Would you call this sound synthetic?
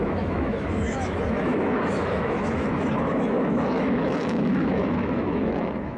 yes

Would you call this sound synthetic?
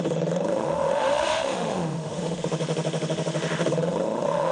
yes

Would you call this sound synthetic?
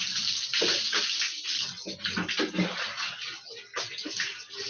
no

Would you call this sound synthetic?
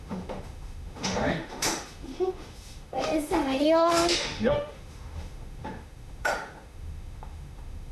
yes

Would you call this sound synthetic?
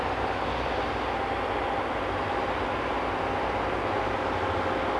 no